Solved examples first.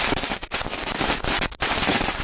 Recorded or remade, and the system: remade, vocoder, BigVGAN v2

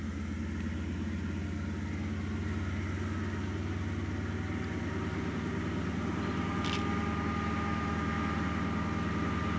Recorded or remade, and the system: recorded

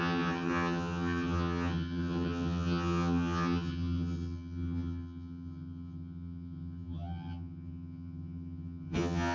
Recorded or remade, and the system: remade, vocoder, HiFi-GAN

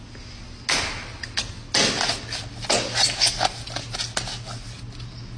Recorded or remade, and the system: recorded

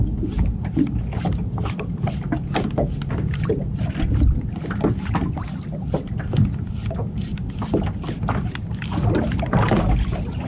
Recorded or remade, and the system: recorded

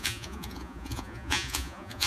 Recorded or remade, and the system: remade, vocoder, Vocos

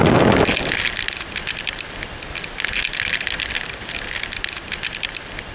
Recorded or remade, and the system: recorded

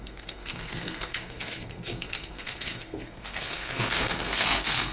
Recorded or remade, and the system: remade, codec, SNAC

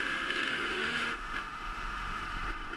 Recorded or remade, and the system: remade, autoencoder, DAC-VAE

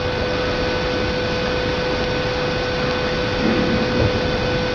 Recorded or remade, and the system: recorded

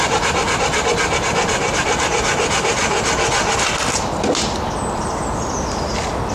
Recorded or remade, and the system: recorded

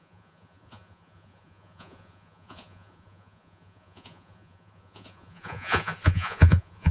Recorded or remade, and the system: remade, vocoder, Vocos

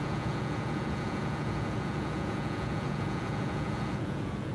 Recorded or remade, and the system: remade, vocoder, Vocos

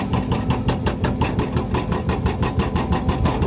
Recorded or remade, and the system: recorded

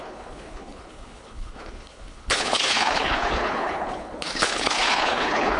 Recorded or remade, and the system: remade, codec, HILCodec